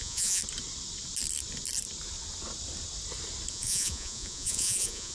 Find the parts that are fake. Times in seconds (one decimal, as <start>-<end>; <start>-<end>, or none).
0.0-0.4; 3.5-5.1